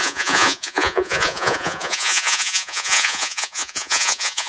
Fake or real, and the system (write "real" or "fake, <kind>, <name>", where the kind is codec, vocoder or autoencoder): fake, vocoder, Vocos